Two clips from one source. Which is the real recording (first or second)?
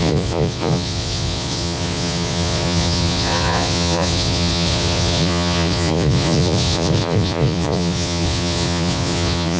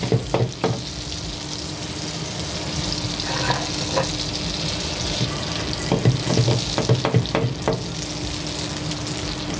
second